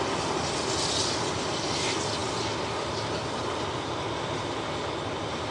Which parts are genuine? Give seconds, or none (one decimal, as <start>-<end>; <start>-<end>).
0.0-5.5